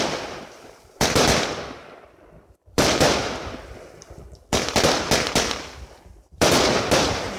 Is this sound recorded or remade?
remade